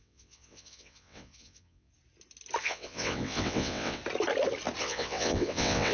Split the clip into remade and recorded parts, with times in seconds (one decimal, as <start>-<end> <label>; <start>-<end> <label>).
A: 0.0-1.9 remade; 1.9-2.6 recorded; 2.6-4.0 remade; 4.0-4.8 recorded; 4.8-5.9 remade